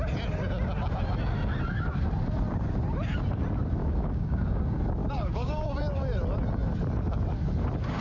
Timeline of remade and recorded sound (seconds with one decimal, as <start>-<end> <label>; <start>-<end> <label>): 0.0-3.8 recorded; 3.8-4.6 remade; 4.6-5.0 recorded; 5.0-5.7 remade; 5.7-8.0 recorded